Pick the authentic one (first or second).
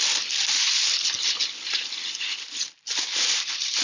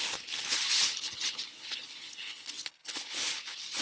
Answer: first